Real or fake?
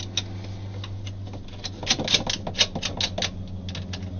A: real